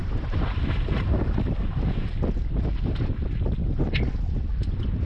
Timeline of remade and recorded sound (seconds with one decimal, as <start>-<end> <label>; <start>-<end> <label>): 0.0-1.2 remade; 1.2-5.1 recorded